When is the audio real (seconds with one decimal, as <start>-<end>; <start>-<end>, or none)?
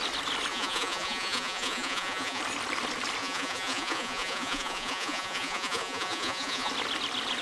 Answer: 0.0-0.5; 2.4-3.2; 6.7-7.4